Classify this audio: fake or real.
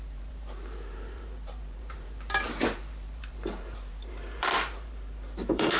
fake